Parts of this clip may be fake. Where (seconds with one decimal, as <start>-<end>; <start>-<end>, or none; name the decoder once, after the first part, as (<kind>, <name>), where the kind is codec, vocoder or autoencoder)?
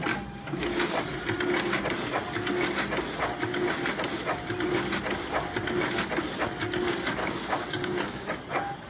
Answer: 7.2-8.4 (codec, DAC)